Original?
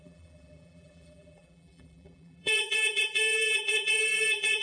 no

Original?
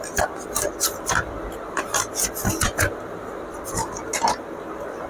yes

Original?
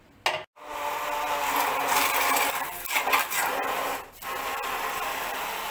yes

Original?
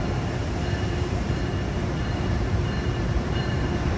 no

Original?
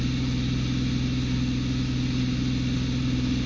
yes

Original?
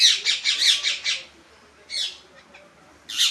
yes